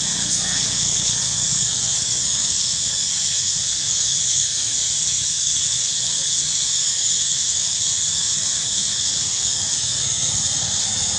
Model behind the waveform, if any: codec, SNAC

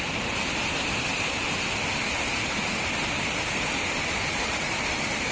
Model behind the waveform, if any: none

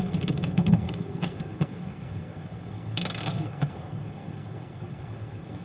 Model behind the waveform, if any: codec, SNAC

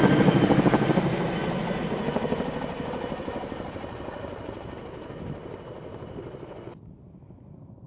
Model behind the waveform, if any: none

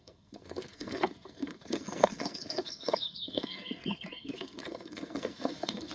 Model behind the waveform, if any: codec, SNAC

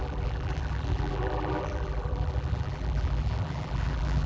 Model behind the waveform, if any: vocoder, BigVGAN v2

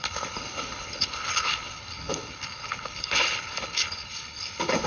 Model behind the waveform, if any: codec, HILCodec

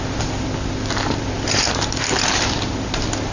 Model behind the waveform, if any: none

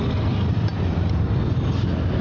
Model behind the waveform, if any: none